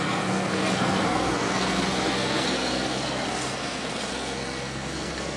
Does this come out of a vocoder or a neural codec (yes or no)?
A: yes